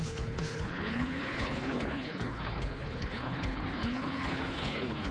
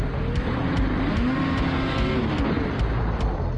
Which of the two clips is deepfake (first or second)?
first